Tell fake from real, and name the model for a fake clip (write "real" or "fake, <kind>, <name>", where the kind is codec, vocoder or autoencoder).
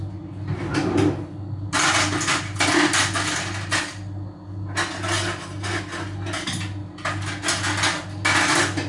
real